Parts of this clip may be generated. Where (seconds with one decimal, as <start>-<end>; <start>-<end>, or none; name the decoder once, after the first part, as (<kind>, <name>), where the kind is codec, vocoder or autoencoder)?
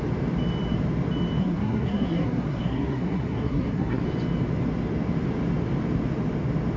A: 1.4-4.0 (codec, SNAC)